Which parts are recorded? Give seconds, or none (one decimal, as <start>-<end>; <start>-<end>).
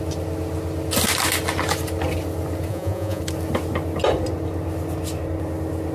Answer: 0.0-2.7; 3.2-5.9